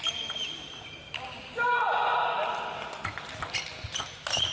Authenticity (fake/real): real